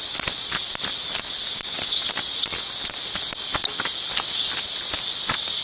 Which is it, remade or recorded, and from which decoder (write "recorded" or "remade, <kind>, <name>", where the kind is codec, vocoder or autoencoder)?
recorded